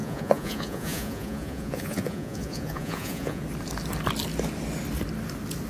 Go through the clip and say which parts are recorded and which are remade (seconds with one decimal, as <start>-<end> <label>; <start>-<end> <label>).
0.0-3.4 remade; 3.4-5.7 recorded